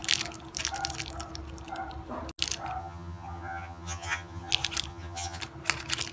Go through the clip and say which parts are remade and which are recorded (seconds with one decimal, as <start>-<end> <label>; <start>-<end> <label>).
0.0-2.8 recorded; 2.8-4.5 remade; 4.5-4.9 recorded; 4.9-5.4 remade; 5.4-6.1 recorded